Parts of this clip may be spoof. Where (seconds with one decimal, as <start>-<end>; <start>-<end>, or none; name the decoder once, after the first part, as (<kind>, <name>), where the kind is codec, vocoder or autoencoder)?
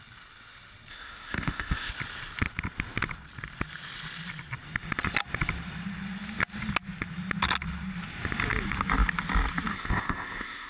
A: 0.9-1.9 (codec, ZipCodec); 9.7-10.7